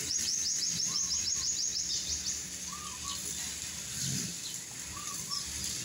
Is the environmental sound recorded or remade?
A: recorded